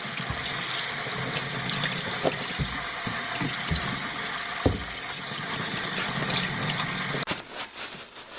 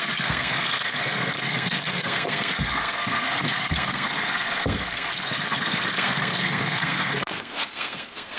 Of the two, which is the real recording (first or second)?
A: first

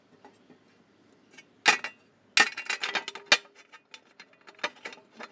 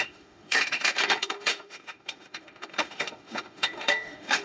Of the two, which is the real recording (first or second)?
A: first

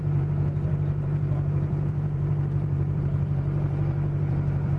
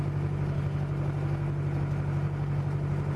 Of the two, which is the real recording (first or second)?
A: second